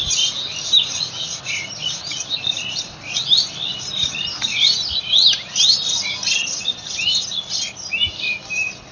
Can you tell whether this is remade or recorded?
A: recorded